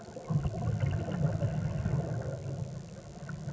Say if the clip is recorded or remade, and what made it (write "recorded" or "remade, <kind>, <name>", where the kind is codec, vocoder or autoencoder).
recorded